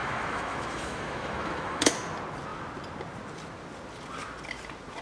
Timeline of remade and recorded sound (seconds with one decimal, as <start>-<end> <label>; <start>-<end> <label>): 0.0-1.9 remade; 1.9-5.0 recorded